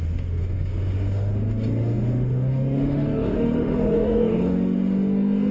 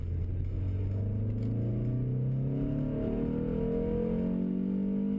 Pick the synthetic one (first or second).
first